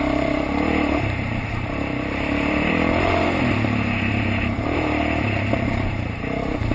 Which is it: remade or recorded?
remade